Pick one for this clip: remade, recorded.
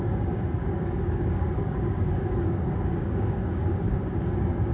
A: remade